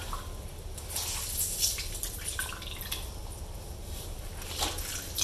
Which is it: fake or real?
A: real